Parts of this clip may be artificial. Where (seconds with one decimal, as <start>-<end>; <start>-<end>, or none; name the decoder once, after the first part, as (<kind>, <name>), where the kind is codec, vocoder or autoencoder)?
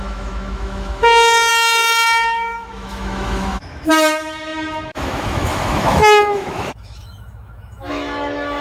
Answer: 0.0-8.6 (autoencoder, DAC-VAE)